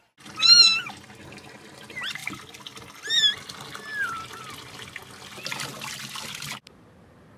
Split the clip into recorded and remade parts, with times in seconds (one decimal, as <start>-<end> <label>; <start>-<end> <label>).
0.0-7.4 recorded